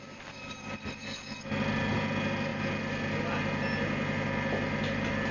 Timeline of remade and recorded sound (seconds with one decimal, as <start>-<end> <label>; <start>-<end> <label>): 0.0-5.3 recorded